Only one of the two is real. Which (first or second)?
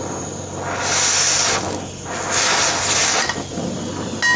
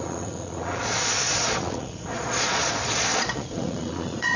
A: first